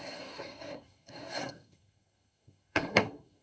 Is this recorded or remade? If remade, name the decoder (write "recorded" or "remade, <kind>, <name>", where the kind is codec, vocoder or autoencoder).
remade, codec, SNAC